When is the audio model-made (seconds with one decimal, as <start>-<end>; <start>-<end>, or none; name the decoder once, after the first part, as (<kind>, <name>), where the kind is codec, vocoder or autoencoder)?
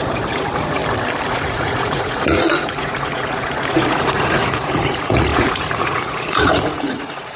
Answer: 0.0-0.8 (vocoder, Vocos); 1.3-7.4